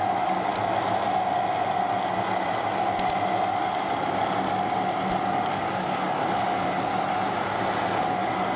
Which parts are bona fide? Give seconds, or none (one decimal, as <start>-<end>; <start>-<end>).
0.5-5.3; 6.9-8.2